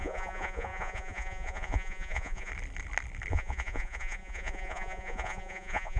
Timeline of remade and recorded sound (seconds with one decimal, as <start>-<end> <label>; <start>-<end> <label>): 0.0-2.5 remade; 2.5-3.3 recorded; 3.3-6.0 remade